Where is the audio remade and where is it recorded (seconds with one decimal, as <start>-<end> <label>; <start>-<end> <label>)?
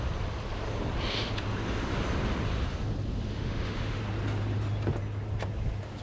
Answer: 0.0-3.3 recorded; 3.3-4.0 remade; 4.0-6.0 recorded